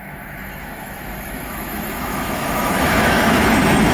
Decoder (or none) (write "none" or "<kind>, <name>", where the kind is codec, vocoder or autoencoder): autoencoder, DAC-VAE